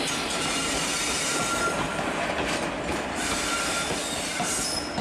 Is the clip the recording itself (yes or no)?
yes